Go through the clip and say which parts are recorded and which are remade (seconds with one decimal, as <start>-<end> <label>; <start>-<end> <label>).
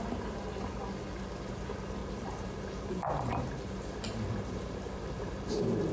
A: 0.0-2.0 recorded; 2.0-5.5 remade; 5.5-5.9 recorded